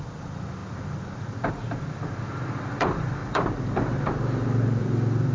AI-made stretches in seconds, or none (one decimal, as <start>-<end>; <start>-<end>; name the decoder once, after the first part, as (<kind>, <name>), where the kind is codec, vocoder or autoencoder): 0.0-5.3 (vocoder, BigVGAN v2)